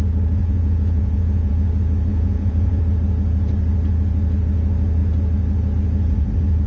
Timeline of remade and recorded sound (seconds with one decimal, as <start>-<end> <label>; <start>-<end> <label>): 0.0-0.4 recorded; 0.4-1.5 remade; 1.5-2.1 recorded; 2.1-2.8 remade; 2.8-6.7 recorded